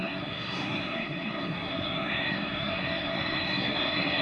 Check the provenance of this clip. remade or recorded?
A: remade